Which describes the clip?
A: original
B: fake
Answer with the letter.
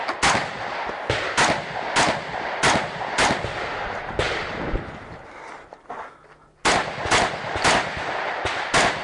A